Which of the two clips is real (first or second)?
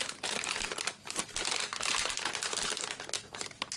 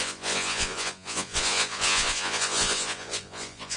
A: first